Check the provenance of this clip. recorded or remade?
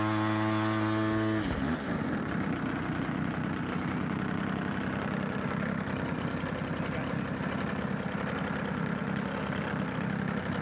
recorded